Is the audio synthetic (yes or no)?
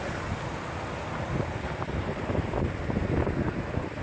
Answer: no